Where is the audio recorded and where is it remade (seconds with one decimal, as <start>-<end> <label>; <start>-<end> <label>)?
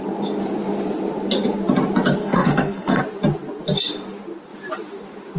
0.0-2.2 recorded; 2.2-3.0 remade; 3.0-5.4 recorded